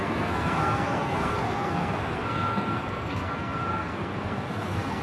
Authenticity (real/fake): fake